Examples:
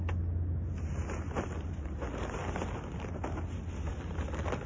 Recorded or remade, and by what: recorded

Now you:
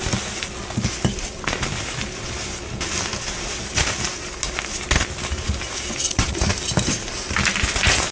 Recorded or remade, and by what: recorded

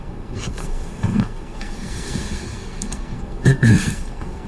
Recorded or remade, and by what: remade, codec, SNAC